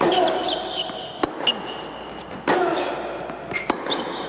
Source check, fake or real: real